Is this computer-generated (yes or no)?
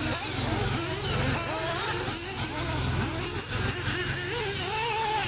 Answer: no